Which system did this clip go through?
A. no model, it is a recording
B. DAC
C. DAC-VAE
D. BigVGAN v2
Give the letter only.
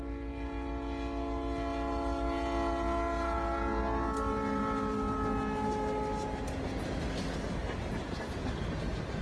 A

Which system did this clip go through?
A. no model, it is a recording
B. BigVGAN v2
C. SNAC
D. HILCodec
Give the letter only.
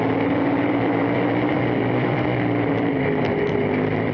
B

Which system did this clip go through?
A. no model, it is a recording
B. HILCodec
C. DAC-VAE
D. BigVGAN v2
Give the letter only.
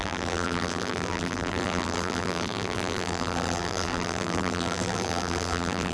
D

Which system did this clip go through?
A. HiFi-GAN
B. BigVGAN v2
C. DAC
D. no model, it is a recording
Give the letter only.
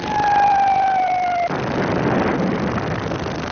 B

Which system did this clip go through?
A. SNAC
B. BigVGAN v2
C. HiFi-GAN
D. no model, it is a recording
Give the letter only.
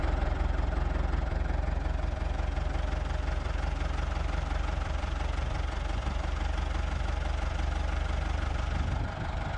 B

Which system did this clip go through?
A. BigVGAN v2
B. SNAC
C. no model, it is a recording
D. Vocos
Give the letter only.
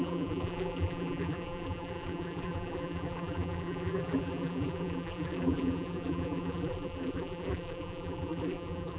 A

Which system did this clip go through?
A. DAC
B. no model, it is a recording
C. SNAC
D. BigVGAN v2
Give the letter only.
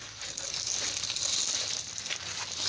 B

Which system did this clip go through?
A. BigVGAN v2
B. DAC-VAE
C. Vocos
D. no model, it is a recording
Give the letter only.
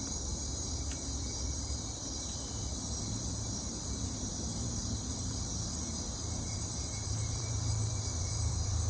A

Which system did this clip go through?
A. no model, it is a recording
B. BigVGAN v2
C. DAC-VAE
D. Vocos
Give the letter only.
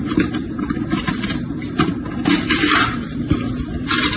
B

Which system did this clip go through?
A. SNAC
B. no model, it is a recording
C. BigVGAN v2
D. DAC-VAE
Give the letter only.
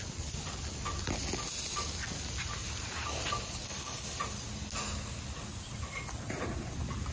B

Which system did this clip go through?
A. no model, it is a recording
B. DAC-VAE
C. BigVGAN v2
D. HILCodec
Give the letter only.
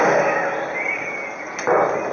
A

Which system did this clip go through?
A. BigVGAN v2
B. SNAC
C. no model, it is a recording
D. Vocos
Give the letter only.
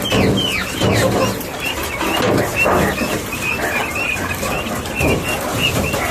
C